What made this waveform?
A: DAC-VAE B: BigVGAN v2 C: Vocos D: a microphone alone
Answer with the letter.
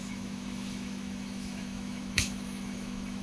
A